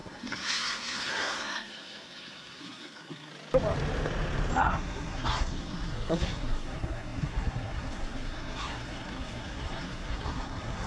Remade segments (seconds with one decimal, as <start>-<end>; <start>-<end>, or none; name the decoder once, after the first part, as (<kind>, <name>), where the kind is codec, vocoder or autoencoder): 0.0-3.3 (codec, SNAC); 4.6-10.9